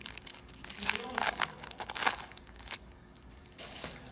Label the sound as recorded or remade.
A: remade